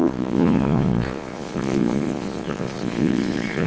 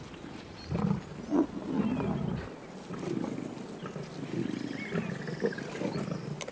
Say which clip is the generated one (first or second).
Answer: first